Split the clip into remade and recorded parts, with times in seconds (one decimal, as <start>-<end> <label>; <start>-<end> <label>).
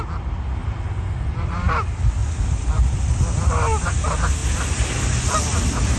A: 0.0-0.6 recorded; 0.6-1.7 remade; 1.7-6.0 recorded